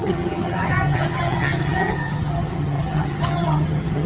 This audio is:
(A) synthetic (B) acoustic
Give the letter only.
A